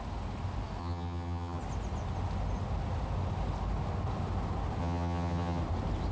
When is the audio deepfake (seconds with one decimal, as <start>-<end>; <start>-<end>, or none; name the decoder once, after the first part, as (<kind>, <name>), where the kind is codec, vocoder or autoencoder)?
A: 0.8-1.6 (vocoder, HiFi-GAN); 4.8-5.6